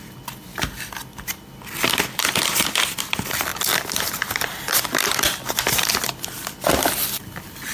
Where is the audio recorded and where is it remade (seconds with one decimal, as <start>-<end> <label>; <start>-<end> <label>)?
0.0-7.7 recorded